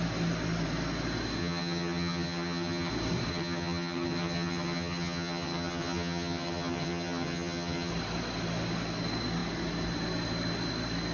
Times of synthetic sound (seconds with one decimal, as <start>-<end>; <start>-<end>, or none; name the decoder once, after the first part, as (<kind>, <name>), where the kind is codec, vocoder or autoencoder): 1.4-2.9 (vocoder, HiFi-GAN); 3.3-7.9